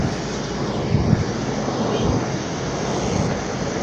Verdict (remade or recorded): recorded